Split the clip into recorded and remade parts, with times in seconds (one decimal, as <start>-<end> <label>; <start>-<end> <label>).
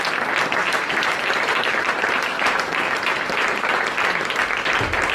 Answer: 0.0-0.6 recorded; 0.6-3.7 remade; 3.7-5.1 recorded